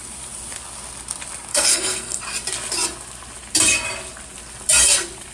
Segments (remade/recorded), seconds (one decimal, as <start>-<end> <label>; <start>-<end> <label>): 0.0-1.5 recorded; 1.5-2.2 remade; 2.2-5.3 recorded